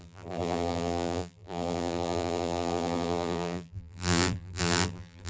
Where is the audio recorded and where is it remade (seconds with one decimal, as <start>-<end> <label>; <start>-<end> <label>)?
0.0-5.3 remade